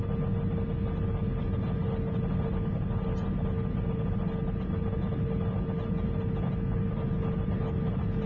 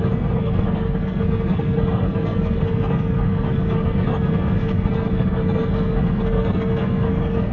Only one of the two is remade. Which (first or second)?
second